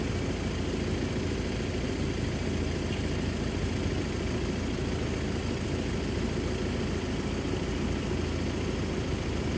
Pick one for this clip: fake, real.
real